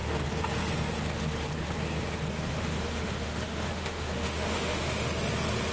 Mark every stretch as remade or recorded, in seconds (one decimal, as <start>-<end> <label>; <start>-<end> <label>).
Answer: 0.0-2.3 recorded; 2.3-5.1 remade; 5.1-5.7 recorded